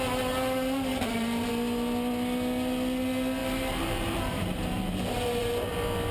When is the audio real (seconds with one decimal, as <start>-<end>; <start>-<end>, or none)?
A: 0.0-0.9; 1.5-3.4; 5.5-6.1